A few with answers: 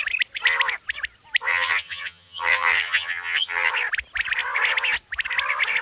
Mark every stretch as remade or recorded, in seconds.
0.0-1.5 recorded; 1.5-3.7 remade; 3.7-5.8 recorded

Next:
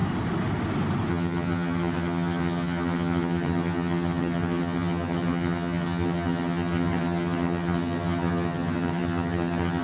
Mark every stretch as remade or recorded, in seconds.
0.0-1.1 recorded; 1.1-9.8 remade

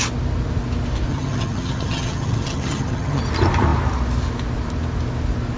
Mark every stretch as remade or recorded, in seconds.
0.0-1.1 recorded; 1.1-3.2 remade; 3.2-5.6 recorded

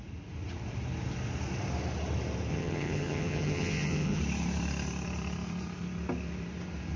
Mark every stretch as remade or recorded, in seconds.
0.0-2.5 recorded; 2.5-4.2 remade; 4.2-7.0 recorded